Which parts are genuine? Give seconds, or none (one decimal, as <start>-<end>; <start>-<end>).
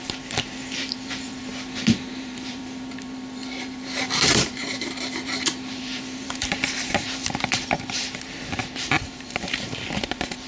1.5-2.1